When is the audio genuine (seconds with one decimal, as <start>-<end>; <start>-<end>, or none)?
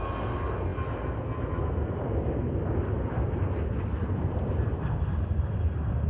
0.0-3.9; 4.7-6.1